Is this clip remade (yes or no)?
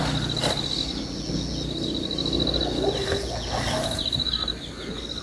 no